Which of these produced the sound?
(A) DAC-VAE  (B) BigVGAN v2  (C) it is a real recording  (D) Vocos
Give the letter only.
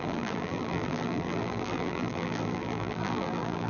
B